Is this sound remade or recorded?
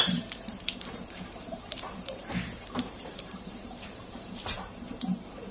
remade